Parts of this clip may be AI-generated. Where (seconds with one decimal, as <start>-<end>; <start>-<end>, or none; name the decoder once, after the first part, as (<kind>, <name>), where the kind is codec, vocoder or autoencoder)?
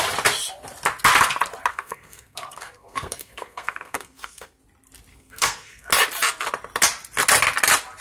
1.7-4.6 (codec, SNAC); 5.1-5.9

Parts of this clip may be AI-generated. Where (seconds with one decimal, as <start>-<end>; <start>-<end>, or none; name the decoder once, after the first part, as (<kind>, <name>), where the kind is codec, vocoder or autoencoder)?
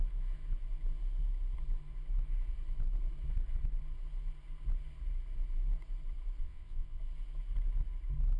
6.4-7.0 (vocoder, WaveNeXt)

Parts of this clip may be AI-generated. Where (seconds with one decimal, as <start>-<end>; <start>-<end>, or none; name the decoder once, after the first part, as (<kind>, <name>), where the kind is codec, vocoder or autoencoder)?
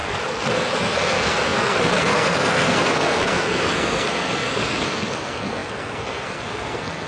0.0-7.1 (codec, SNAC)